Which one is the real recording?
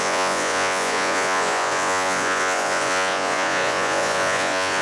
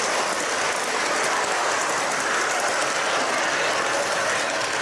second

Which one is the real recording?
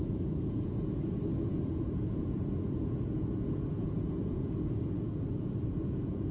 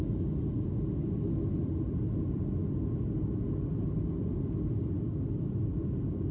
second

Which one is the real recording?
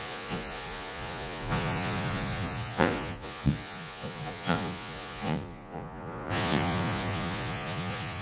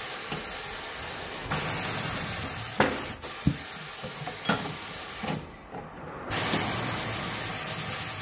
second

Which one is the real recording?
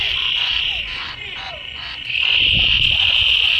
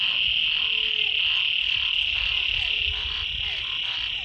second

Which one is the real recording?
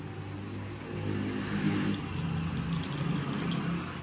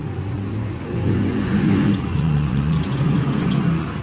first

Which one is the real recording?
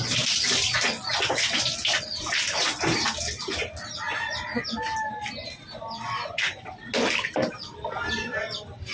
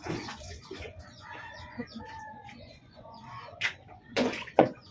first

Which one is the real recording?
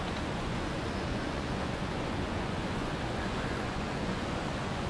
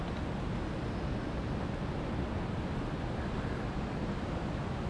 second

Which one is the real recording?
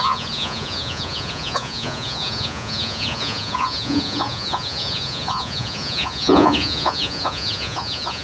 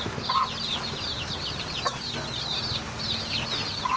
second